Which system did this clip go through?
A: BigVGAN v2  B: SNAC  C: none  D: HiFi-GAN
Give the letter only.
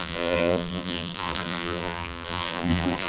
A